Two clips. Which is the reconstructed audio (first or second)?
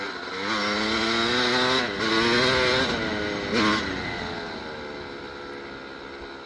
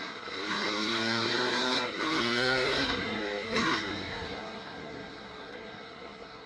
second